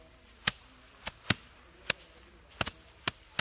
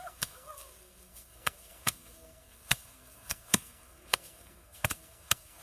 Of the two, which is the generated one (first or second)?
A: second